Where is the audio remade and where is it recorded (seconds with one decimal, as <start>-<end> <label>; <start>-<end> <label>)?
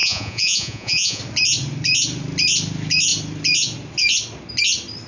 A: 0.0-1.2 remade; 1.2-5.1 recorded